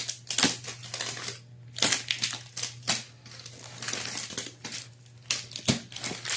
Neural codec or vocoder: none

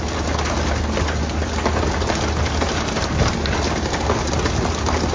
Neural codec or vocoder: none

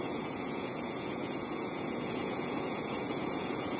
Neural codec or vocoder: vocoder, Vocos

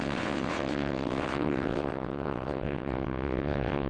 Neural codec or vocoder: vocoder, WaveNeXt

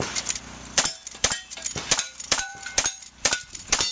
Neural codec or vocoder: vocoder, BigVGAN v2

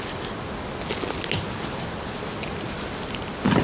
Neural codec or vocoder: none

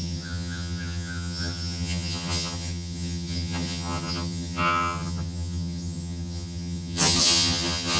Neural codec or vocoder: vocoder, HiFi-GAN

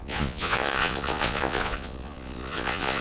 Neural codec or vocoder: vocoder, Vocos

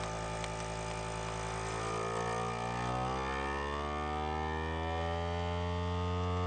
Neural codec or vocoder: none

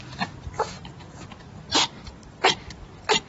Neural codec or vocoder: none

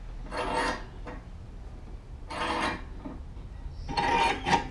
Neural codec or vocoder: none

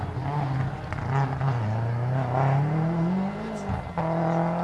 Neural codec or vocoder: none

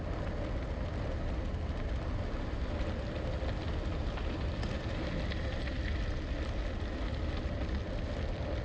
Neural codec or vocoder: none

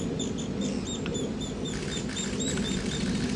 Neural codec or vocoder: none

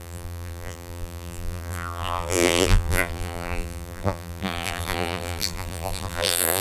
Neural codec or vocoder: vocoder, BigVGAN v2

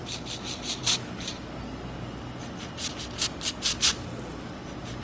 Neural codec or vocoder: none